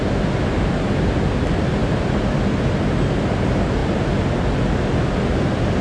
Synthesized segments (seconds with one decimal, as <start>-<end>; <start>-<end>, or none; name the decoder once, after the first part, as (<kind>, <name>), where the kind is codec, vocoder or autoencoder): none